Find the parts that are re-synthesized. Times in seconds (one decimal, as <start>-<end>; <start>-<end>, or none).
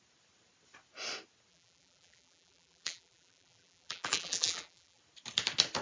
1.5-5.0